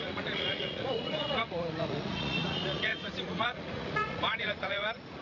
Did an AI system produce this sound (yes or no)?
yes